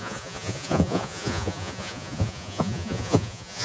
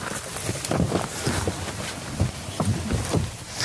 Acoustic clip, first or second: second